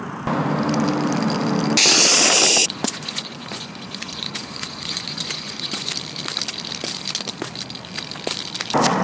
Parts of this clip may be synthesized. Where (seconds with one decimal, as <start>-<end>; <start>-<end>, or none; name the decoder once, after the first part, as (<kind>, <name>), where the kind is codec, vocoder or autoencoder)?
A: 2.6-5.9 (vocoder, Vocos)